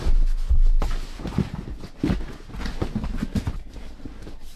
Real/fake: real